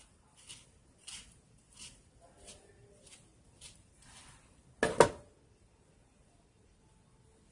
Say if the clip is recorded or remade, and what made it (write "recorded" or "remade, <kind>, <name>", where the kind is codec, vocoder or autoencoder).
recorded